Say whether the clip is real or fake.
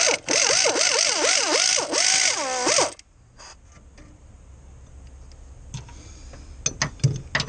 real